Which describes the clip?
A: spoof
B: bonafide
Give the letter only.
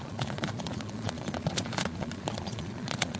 A